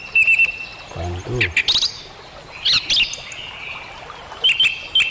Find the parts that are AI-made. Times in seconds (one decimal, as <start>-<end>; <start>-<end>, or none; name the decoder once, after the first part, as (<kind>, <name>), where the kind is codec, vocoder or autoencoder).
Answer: none